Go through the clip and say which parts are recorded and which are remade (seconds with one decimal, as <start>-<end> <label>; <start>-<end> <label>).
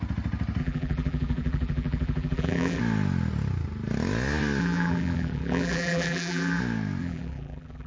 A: 0.0-0.6 recorded; 0.6-2.8 remade; 2.8-4.6 recorded; 4.6-6.6 remade; 6.6-7.0 recorded; 7.0-7.9 remade